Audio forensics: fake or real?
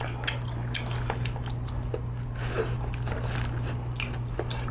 real